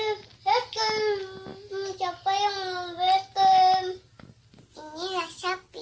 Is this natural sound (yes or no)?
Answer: yes